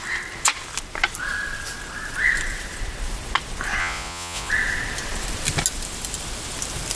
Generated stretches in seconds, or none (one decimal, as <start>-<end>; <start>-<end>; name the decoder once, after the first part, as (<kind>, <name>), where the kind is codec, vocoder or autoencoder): 3.8-4.5 (vocoder, Vocos)